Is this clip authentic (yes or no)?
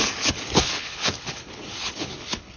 no